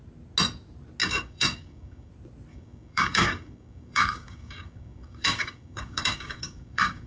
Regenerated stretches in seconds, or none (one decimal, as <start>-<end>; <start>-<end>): 1.0-2.1; 2.5-7.1